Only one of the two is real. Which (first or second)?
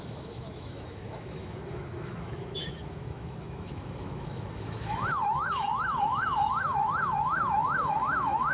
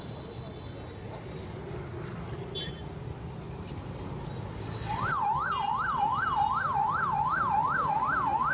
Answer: second